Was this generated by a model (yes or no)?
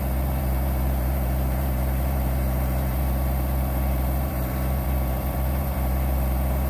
yes